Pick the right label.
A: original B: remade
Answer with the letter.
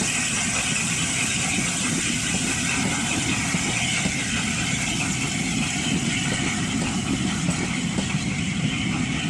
A